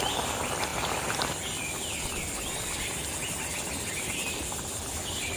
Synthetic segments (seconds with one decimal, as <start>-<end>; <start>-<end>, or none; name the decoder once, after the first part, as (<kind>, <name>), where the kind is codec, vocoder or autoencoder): 0.0-5.4 (vocoder, BigVGAN v2)